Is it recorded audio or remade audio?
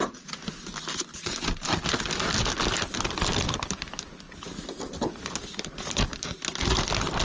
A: recorded